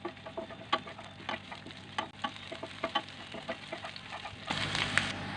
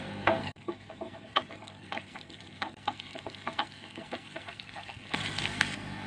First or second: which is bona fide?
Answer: first